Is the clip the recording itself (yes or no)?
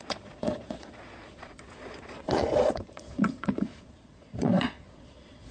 no